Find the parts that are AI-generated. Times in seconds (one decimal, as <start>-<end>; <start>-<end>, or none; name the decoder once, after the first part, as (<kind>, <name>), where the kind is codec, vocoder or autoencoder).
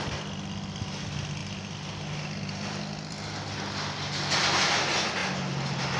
none